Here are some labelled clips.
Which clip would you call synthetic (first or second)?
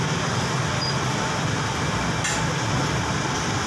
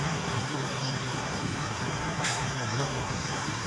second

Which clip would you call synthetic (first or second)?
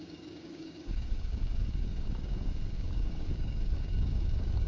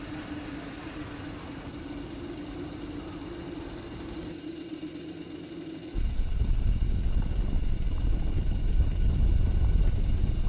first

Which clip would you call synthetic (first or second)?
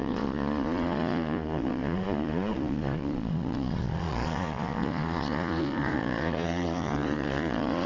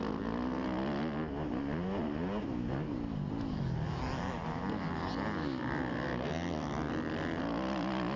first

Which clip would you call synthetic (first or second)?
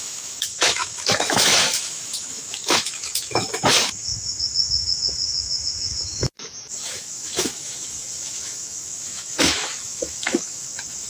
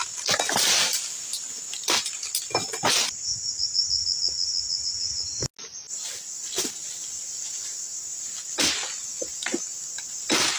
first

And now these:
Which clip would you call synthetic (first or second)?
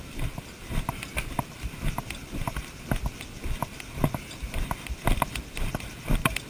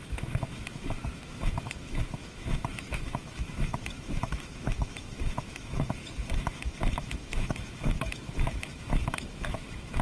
second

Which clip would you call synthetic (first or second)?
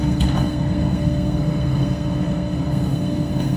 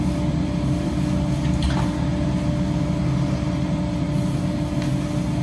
first